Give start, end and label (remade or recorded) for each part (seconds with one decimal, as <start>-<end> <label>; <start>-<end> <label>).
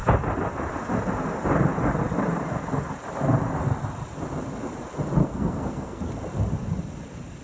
0.0-5.2 recorded; 5.2-6.1 remade; 6.1-7.4 recorded